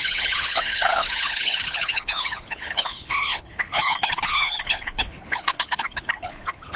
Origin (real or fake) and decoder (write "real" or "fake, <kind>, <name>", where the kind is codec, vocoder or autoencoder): fake, codec, HILCodec